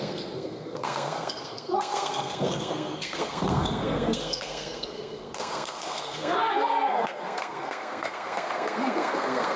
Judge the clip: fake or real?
fake